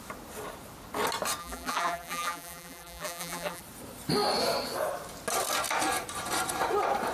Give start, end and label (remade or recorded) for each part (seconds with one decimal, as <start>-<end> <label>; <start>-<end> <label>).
0.0-1.4 recorded; 1.4-3.6 remade; 3.6-7.1 recorded